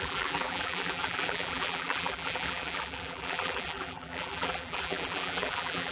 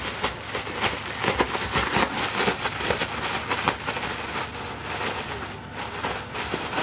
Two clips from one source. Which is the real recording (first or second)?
second